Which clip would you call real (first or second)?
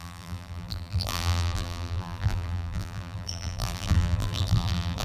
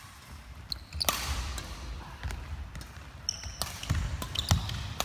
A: second